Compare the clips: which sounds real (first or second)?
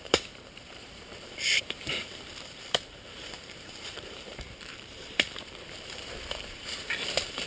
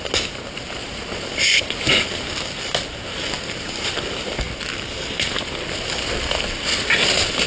second